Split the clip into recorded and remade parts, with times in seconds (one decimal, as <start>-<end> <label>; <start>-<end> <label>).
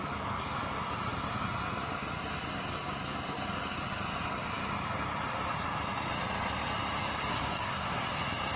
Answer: 0.0-7.3 recorded; 7.3-8.1 remade; 8.1-8.6 recorded